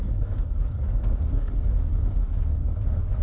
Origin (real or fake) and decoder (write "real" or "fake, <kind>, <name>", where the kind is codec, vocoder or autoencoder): fake, codec, DAC